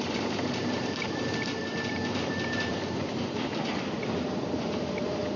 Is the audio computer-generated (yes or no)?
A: yes